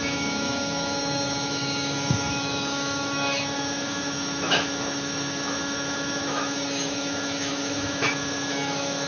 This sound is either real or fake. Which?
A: fake